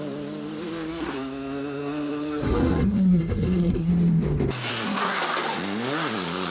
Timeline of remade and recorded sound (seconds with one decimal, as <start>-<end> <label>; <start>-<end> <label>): 0.0-0.9 recorded; 0.9-3.9 remade; 3.9-4.7 recorded; 4.7-5.2 remade; 5.2-6.5 recorded